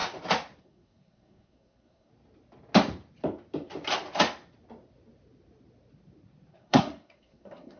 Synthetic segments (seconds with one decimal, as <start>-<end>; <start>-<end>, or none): 0.6-2.1; 6.5-7.8